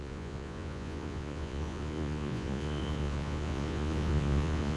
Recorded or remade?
remade